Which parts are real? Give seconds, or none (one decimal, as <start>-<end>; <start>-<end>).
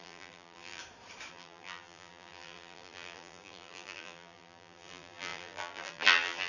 0.8-1.3